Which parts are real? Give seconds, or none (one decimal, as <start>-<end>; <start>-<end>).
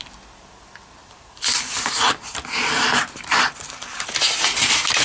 0.0-1.0; 4.0-5.0